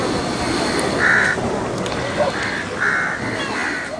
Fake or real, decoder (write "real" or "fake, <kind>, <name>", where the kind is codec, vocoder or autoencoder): real